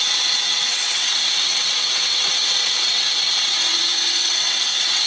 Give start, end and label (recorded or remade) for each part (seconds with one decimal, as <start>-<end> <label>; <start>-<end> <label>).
0.0-5.1 remade